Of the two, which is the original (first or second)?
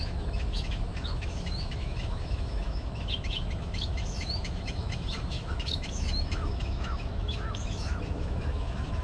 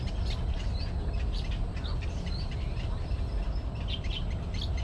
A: second